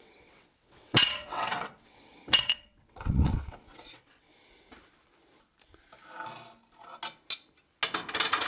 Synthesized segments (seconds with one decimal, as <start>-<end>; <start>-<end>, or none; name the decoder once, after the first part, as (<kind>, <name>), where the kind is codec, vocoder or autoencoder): 0.0-4.3 (vocoder, WaveNeXt)

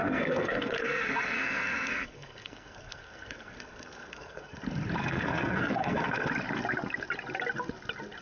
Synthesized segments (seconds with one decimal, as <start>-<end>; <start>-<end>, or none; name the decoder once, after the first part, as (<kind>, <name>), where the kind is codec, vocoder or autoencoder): 0.0-4.6 (codec, SNAC); 5.0-6.3

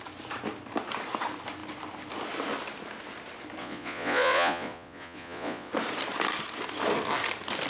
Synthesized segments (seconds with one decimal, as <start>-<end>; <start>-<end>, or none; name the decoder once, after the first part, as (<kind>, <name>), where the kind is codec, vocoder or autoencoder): 3.6-5.7 (vocoder, Vocos)

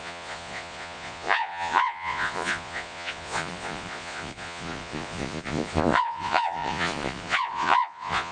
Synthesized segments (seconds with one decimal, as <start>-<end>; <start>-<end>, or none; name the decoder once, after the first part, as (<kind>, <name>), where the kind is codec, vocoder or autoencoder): 0.0-8.3 (vocoder, Vocos)

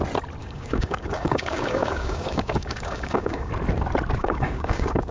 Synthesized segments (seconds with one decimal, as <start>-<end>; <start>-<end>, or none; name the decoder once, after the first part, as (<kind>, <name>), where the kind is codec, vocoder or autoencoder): 0.4-3.5 (codec, DAC); 4.2-5.1

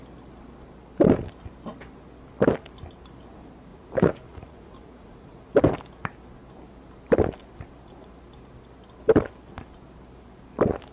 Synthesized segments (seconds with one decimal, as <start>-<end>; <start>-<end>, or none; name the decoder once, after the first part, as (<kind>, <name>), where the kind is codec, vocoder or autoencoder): 3.7-5.4 (vocoder, Vocos)

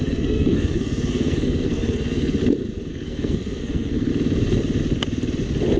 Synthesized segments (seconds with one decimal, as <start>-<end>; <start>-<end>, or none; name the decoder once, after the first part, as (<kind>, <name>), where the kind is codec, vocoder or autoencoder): 0.0-2.4 (codec, SNAC); 2.9-4.1

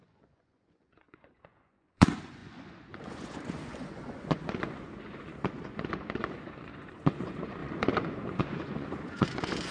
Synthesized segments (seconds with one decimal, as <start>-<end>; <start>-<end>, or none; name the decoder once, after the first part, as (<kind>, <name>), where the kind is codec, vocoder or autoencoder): 0.0-9.7 (vocoder, Vocos)